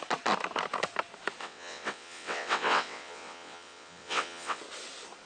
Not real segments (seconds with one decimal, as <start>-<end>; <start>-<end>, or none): 1.4-4.6